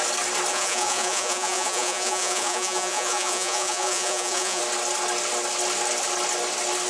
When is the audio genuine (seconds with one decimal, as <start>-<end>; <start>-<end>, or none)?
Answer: 0.0-0.5; 4.6-6.9